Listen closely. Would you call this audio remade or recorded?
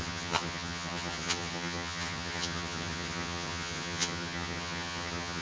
remade